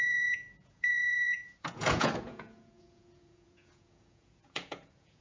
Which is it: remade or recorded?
remade